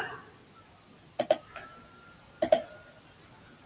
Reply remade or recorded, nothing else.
recorded